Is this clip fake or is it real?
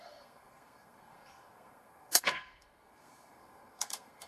fake